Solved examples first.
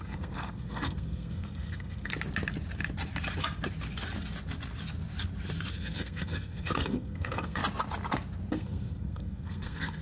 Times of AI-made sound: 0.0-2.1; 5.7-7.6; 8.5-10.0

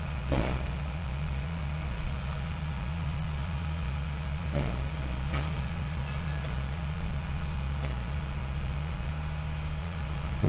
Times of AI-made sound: 0.0-9.1; 9.8-10.5

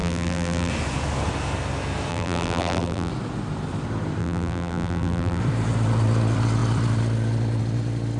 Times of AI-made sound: 0.0-0.7; 2.1-3.1; 4.2-5.4

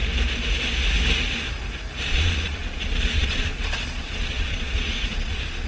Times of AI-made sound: 2.1-5.7

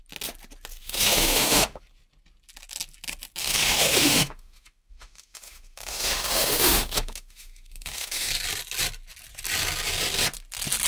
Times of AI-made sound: 0.8-1.8; 3.4-8.3